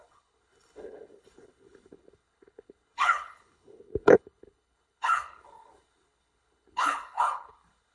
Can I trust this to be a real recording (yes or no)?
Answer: no